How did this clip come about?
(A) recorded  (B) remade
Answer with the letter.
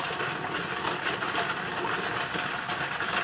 A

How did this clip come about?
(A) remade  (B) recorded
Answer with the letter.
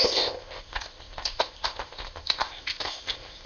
A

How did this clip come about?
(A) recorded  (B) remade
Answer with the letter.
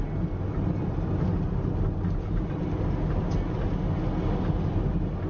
A